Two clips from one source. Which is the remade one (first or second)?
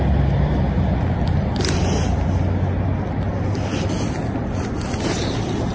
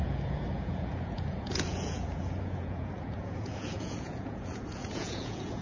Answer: second